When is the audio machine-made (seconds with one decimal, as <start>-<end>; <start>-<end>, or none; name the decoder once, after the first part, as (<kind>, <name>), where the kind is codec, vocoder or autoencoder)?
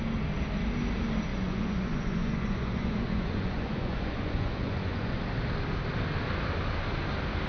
1.3-5.2 (vocoder, Vocos)